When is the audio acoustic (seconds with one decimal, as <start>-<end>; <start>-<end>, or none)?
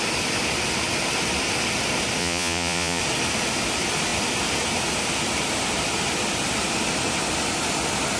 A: 0.0-2.2; 3.0-8.2